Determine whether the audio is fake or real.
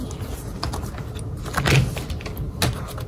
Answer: real